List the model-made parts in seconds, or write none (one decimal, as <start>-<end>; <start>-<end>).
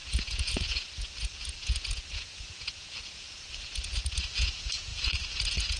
0.0-5.8